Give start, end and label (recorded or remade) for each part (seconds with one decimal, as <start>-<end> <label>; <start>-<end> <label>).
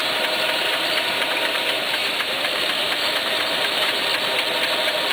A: 0.0-4.1 remade; 4.1-5.1 recorded